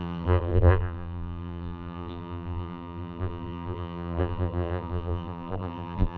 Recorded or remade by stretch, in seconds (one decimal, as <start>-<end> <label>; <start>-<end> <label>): 0.0-6.2 remade